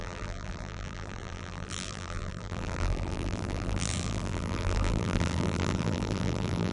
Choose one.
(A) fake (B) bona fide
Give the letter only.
A